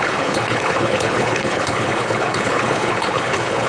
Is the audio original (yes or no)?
no